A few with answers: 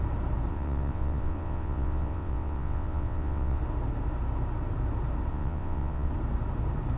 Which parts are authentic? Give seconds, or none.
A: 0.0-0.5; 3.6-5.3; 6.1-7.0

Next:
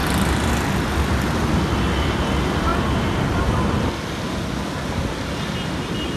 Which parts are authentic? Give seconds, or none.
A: 0.0-6.2

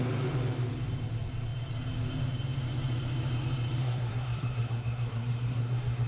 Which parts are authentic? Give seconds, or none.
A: 0.0-3.8

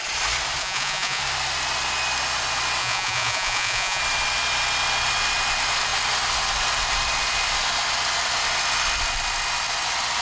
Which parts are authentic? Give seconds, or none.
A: 0.0-0.6; 1.2-2.8; 4.0-10.2

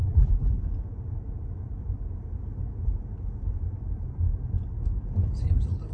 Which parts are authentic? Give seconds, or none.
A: 0.5-5.9

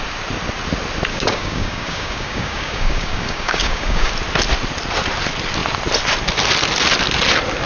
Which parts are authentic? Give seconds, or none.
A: 0.0-1.1; 4.1-7.7

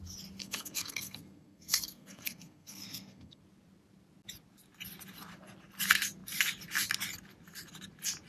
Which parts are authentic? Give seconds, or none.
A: 0.0-0.4; 3.4-8.3

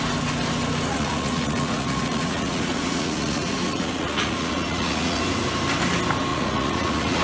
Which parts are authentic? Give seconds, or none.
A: 0.0-0.9; 5.2-6.3